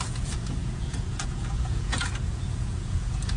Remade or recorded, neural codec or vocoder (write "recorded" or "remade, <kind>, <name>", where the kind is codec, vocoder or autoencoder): remade, vocoder, Vocos